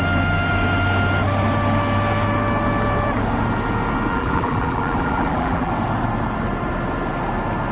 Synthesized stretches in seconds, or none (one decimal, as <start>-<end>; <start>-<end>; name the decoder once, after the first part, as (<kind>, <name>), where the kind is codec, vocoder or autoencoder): 4.1-5.7 (vocoder, BigVGAN v2)